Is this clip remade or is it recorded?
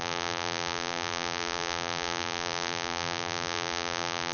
remade